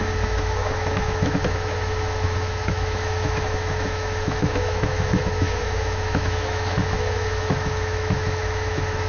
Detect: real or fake fake